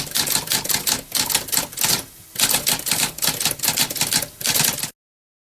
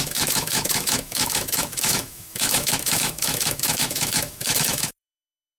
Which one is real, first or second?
first